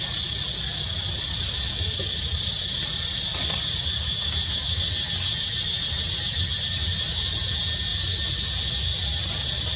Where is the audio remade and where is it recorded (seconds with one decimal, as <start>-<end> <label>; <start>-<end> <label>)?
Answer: 0.0-9.8 recorded